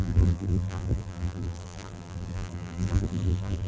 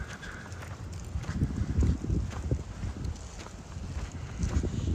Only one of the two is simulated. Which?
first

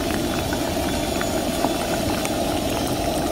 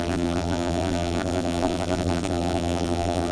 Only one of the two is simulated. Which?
second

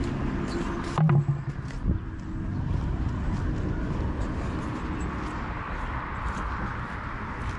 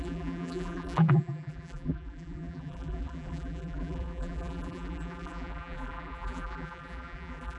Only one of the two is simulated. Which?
second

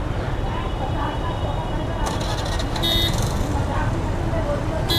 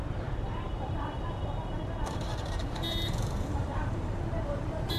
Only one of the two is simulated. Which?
second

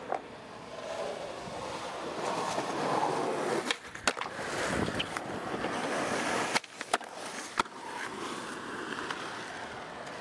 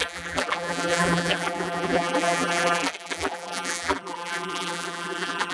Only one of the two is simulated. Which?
second